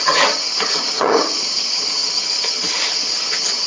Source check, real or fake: fake